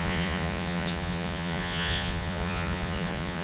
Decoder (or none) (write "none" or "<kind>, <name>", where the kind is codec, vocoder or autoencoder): vocoder, Vocos